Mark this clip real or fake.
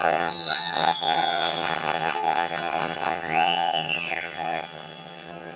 fake